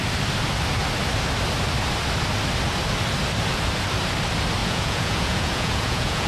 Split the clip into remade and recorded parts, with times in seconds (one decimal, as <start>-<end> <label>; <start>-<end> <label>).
0.0-4.6 recorded; 4.6-6.3 remade